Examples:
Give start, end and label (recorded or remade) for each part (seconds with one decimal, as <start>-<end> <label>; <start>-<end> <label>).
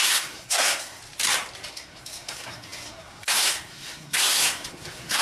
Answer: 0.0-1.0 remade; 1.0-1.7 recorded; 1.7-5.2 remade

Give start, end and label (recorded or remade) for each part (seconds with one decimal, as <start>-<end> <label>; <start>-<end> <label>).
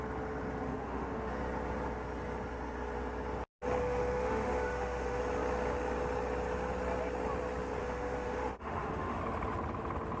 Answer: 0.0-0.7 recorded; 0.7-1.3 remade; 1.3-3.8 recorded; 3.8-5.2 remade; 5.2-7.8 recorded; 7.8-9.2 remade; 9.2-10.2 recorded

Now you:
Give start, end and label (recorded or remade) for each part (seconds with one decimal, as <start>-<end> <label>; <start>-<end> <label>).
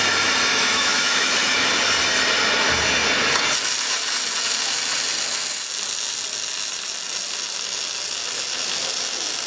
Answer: 0.0-0.5 recorded; 0.5-1.7 remade; 1.7-9.5 recorded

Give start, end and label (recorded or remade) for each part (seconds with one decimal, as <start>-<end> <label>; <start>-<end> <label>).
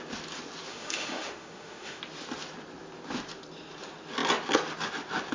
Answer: 0.0-0.7 recorded; 0.7-2.0 remade; 2.0-5.3 recorded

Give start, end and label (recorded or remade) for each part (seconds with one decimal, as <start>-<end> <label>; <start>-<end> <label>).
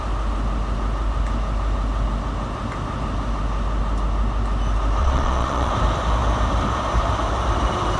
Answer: 0.0-5.0 recorded; 5.0-5.7 remade; 5.7-8.0 recorded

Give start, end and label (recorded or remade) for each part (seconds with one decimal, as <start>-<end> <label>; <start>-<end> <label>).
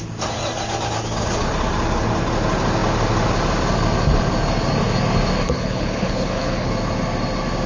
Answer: 0.0-5.4 recorded; 5.4-6.7 remade; 6.7-7.7 recorded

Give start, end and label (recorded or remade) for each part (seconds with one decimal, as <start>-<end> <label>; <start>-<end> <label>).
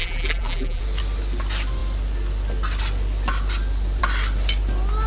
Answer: 0.0-0.8 remade; 0.8-5.1 recorded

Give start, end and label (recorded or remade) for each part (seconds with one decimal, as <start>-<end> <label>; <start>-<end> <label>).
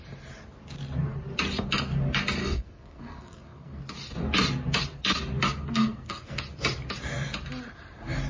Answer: 0.0-2.4 recorded; 2.4-3.8 remade; 3.8-5.6 recorded; 5.6-6.4 remade; 6.4-8.3 recorded